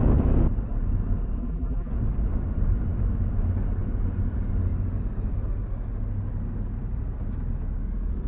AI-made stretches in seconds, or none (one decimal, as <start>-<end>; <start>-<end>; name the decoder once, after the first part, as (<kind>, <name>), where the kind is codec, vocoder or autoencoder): 1.4-1.9 (vocoder, BigVGAN v2)